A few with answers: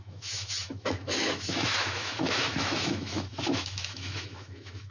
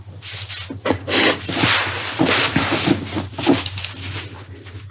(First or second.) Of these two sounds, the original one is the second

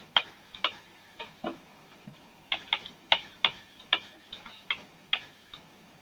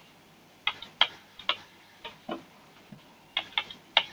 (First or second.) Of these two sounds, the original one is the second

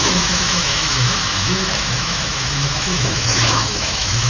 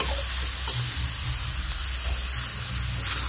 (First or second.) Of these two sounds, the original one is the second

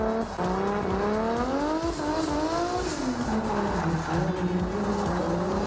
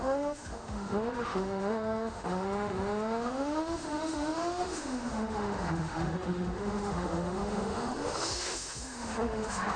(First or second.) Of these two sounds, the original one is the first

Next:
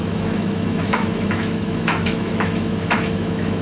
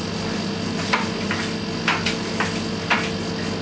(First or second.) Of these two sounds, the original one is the second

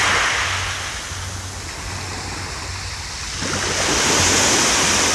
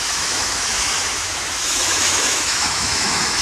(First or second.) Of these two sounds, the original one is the first